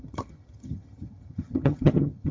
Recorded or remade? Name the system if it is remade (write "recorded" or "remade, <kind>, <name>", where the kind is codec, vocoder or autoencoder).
remade, vocoder, HiFi-GAN